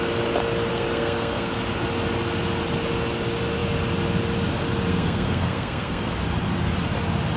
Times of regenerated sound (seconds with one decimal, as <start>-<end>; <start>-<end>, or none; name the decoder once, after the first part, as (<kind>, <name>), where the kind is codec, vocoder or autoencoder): 0.7-1.5 (codec, SNAC); 4.9-6.1